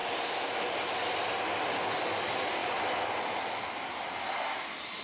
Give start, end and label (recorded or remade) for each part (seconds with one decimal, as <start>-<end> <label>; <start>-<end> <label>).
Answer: 0.0-5.0 recorded